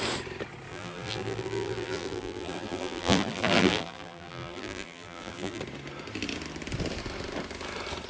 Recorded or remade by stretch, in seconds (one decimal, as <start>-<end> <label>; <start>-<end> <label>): 0.0-0.7 recorded; 0.7-5.6 remade; 5.6-8.1 recorded